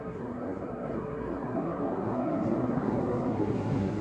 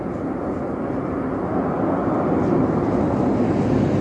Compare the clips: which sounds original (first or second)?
second